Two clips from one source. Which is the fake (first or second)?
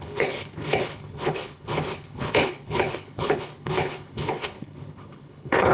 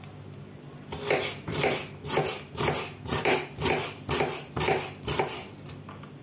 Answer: first